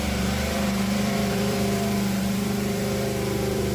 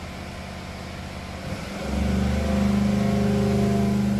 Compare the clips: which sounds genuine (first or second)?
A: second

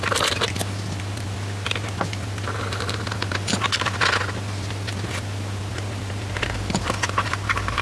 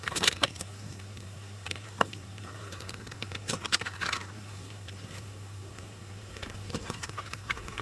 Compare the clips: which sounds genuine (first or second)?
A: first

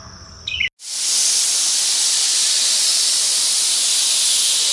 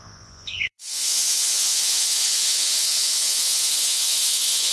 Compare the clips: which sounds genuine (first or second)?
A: first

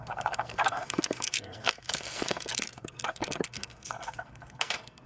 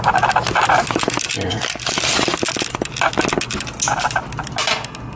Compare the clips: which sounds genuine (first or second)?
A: second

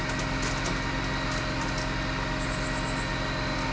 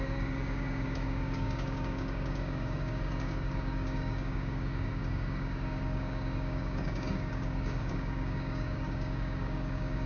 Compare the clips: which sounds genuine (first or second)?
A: first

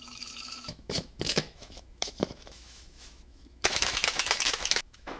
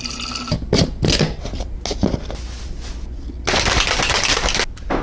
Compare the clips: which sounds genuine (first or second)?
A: second